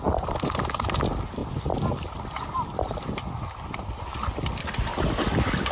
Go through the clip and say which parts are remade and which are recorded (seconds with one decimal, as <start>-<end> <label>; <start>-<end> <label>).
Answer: 0.0-5.7 recorded